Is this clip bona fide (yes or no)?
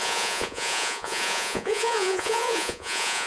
no